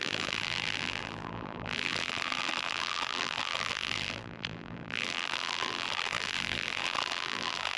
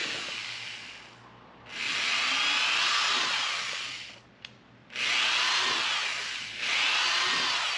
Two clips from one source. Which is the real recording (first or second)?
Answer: second